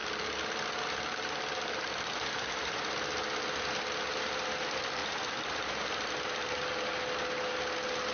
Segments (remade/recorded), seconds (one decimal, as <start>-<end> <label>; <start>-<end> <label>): 0.0-5.0 recorded; 5.0-6.1 remade; 6.1-8.1 recorded